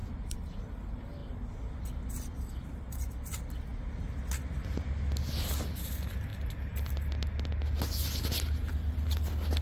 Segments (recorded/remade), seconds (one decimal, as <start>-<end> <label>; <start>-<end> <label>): 0.0-0.6 remade; 0.6-9.6 recorded